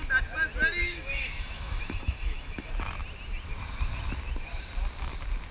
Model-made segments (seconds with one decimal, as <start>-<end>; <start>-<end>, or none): 0.8-2.7